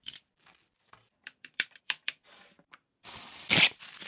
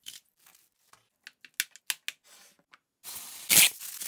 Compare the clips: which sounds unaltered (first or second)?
second